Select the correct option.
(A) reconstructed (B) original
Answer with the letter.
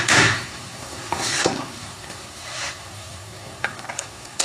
A